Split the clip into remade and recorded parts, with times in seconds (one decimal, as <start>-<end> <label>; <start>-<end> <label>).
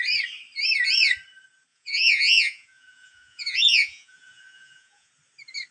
0.0-1.7 recorded; 1.7-5.1 remade; 5.1-5.7 recorded